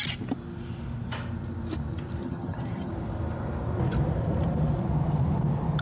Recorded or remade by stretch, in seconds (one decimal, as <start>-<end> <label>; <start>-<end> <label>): 0.0-2.2 recorded; 2.2-2.9 remade; 2.9-5.8 recorded